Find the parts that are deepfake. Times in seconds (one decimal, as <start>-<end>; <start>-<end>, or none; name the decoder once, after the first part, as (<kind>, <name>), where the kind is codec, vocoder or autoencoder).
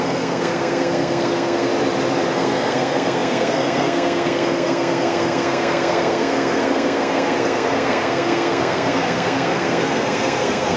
0.0-1.7 (codec, SNAC); 2.3-10.8